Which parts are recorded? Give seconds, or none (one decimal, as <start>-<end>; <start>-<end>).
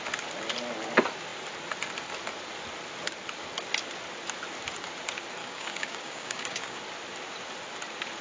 0.0-5.4; 6.8-8.2